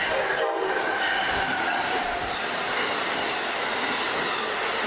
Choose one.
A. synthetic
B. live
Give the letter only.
B